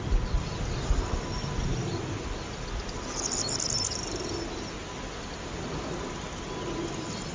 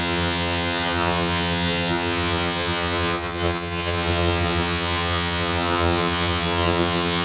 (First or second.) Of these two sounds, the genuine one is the first